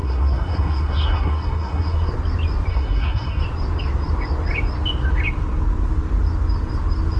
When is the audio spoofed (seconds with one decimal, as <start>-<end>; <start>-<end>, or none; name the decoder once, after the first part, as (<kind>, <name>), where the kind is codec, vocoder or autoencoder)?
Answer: 0.0-2.1 (codec, SNAC); 2.7-3.4